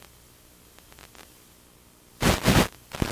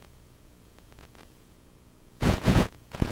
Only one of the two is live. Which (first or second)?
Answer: first